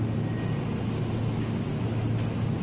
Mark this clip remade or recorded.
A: recorded